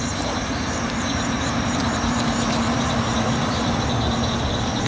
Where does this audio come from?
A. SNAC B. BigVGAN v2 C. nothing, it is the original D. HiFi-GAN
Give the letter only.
B